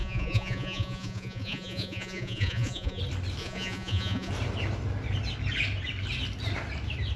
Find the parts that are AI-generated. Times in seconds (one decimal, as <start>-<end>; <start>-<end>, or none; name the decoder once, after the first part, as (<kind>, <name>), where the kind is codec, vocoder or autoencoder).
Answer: 0.0-3.0 (vocoder, Vocos); 3.4-4.3